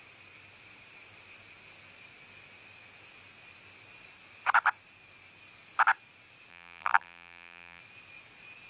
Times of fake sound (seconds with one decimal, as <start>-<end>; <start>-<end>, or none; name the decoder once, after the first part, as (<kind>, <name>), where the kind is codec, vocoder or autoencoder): 6.5-7.8 (vocoder, BigVGAN v2)

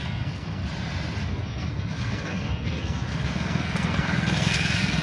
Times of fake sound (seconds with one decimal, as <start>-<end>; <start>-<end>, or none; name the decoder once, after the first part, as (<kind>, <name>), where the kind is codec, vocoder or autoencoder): 0.0-0.6 (codec, SNAC); 1.3-5.0

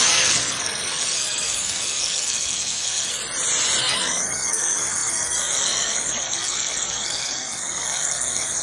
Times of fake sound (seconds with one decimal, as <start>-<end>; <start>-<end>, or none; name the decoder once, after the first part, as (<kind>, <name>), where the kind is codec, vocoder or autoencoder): 0.0-3.2 (codec, SNAC); 3.8-8.6

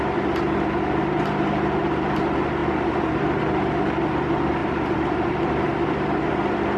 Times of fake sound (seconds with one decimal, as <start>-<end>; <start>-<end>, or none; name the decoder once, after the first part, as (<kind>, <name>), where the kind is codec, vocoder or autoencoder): none

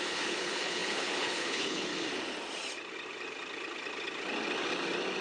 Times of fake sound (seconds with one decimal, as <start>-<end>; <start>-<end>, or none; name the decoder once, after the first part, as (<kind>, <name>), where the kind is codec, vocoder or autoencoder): 0.0-1.9 (codec, HILCodec)

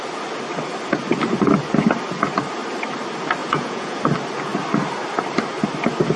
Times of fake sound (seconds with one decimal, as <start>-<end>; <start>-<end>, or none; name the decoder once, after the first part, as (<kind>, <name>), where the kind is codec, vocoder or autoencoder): 3.4-4.0 (vocoder, Vocos)